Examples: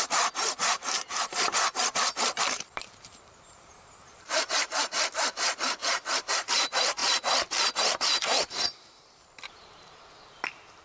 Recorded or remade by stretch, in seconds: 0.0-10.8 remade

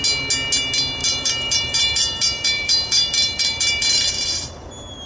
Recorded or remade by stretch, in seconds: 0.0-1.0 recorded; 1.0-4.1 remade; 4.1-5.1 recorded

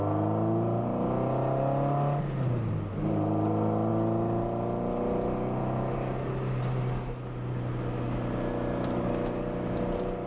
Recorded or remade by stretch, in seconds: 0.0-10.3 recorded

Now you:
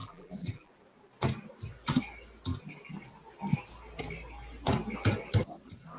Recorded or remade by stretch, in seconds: 0.0-0.7 remade; 0.7-6.0 recorded

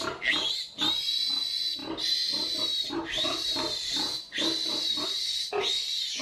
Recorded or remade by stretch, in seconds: 0.0-1.8 recorded; 1.8-5.5 remade; 5.5-6.2 recorded

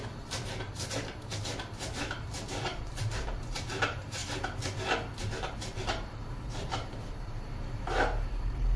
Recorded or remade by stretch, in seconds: 0.0-4.2 remade; 4.2-5.2 recorded; 5.2-8.8 remade

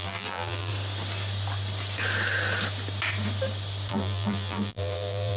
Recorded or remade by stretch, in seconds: 0.0-0.7 remade; 0.7-3.9 recorded; 3.9-5.4 remade

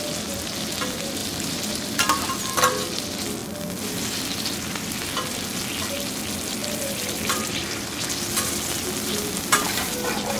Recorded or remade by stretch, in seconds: 0.0-1.2 recorded; 1.2-2.4 remade; 2.4-3.4 recorded; 3.4-4.0 remade; 4.0-6.6 recorded; 6.6-7.8 remade; 7.8-10.4 recorded